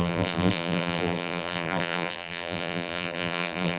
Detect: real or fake fake